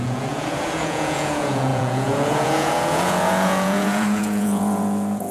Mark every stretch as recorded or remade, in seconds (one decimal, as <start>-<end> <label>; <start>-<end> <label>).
0.0-5.3 remade